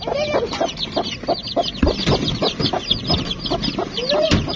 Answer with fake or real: real